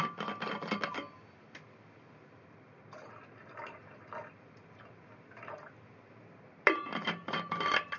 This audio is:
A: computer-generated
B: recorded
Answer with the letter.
B